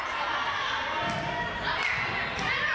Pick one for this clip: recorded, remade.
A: recorded